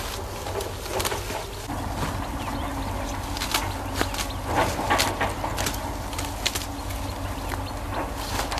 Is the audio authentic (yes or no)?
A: yes